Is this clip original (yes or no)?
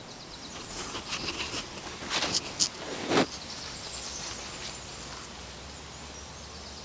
yes